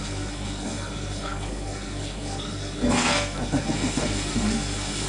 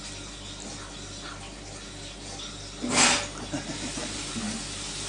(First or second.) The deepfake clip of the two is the first